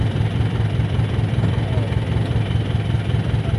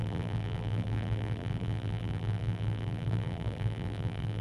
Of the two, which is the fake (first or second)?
second